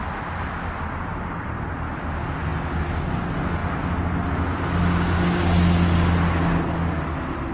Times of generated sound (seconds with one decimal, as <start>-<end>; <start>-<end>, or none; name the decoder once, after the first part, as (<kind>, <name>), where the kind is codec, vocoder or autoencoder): 1.1-1.7 (vocoder, BigVGAN v2)